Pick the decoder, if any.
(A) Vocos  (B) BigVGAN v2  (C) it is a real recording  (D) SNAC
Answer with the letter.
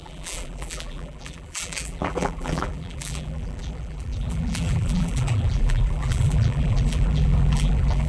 B